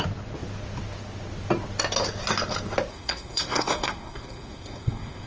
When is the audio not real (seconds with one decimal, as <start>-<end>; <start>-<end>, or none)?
2.9-5.3